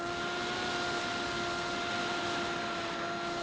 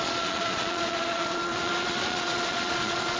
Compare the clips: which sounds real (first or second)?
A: first